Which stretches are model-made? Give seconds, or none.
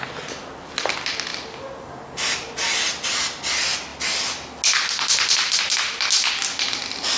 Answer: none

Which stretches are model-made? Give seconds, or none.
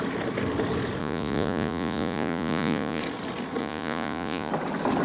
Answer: 1.0-3.0 (vocoder, Vocos); 3.6-4.5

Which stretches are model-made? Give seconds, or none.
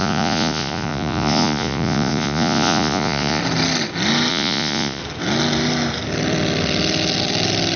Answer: 0.0-3.4 (vocoder, Vocos); 4.3-5.0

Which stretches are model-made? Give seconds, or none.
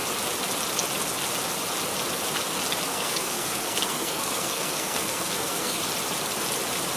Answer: 2.9-5.8 (codec, SNAC)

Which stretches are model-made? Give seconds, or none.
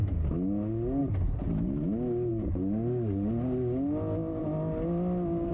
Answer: none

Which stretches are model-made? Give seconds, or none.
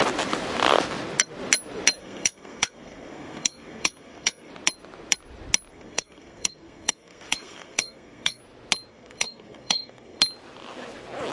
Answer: 2.0-4.5 (codec, SNAC); 5.7-8.4; 8.9-10.2